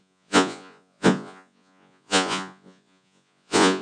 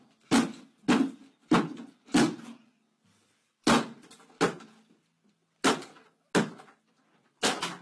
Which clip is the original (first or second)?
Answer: second